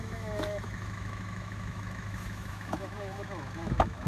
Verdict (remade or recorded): remade